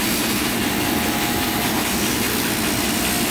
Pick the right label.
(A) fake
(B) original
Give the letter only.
B